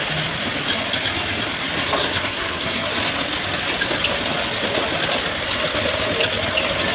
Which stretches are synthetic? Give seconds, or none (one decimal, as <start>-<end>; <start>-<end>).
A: 2.0-2.9